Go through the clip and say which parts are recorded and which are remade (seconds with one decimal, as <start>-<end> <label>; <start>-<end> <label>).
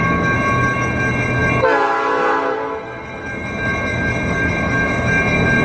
0.0-5.6 recorded